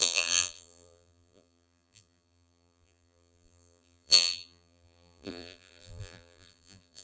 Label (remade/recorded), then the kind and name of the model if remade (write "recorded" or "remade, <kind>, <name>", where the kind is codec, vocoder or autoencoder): remade, vocoder, BigVGAN v2